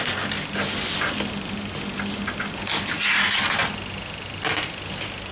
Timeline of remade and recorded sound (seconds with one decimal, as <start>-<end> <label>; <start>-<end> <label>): 0.0-5.3 recorded